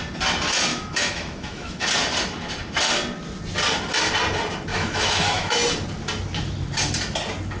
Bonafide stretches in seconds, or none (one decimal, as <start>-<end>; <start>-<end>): 0.0-0.7; 1.9-4.7; 5.6-7.6